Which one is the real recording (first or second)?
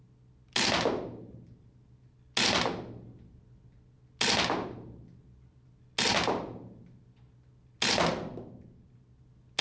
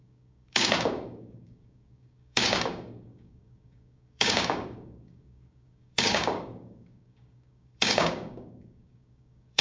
first